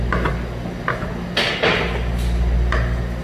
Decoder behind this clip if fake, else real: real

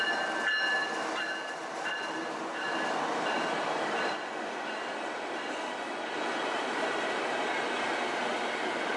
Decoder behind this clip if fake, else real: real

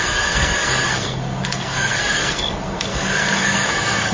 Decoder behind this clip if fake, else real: fake, codec, SNAC